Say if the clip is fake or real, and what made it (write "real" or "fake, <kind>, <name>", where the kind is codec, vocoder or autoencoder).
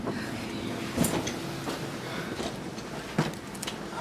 real